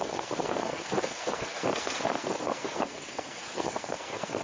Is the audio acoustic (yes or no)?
no